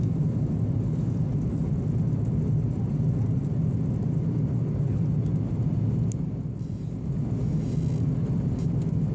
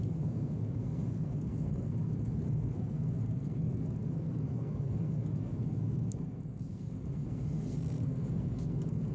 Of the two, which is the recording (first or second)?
first